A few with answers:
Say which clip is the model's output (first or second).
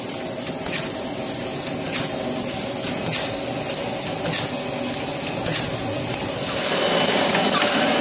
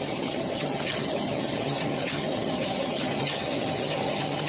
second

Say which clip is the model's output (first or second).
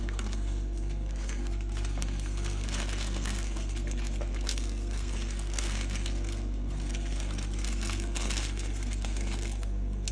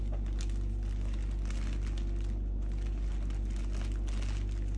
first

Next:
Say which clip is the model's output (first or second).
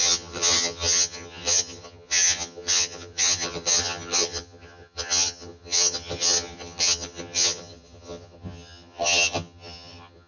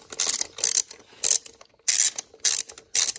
first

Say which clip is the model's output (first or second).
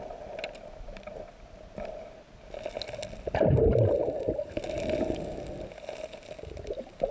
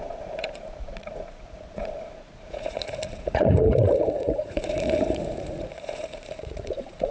second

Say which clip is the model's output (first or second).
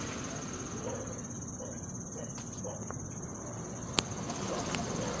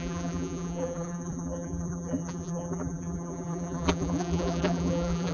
second